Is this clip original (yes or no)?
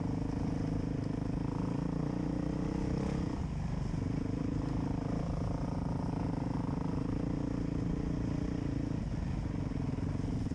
yes